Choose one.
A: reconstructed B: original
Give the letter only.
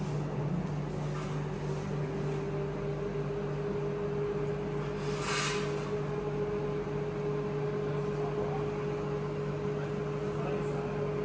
B